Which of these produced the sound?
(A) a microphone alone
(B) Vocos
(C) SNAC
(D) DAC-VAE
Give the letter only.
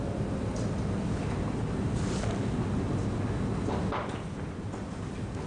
A